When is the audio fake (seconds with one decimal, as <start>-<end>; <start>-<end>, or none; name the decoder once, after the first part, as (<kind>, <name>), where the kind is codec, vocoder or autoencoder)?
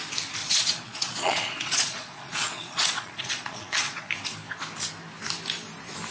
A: 0.4-4.1 (vocoder, Vocos)